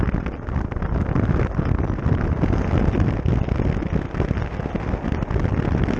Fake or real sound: real